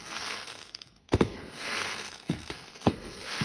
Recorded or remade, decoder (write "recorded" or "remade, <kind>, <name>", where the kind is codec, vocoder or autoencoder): remade, codec, SNAC